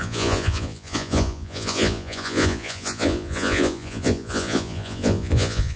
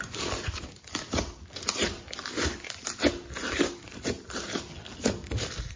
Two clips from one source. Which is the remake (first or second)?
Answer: first